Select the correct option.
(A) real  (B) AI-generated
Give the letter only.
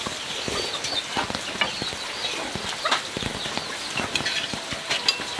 A